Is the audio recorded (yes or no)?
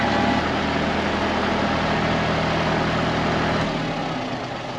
yes